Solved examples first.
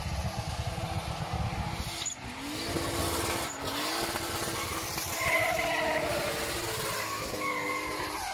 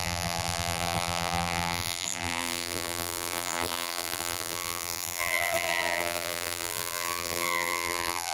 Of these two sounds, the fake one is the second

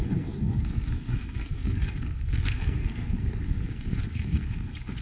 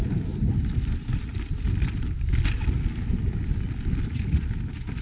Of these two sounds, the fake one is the first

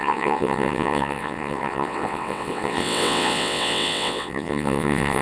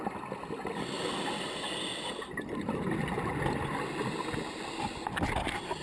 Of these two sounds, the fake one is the first